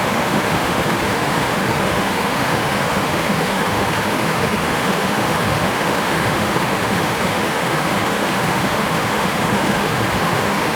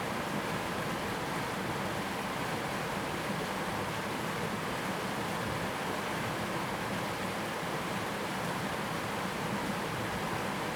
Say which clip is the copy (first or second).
first